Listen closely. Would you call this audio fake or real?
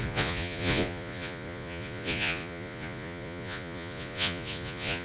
fake